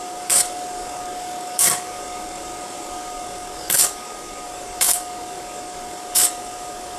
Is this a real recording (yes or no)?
no